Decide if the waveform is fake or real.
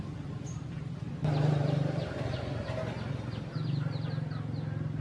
real